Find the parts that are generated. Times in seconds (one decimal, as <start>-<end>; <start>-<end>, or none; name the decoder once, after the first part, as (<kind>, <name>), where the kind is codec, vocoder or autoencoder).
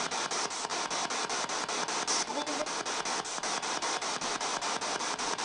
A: 0.0-0.7 (vocoder, BigVGAN v2); 3.3-4.5; 5.0-5.4